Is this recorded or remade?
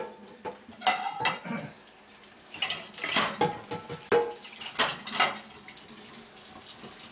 recorded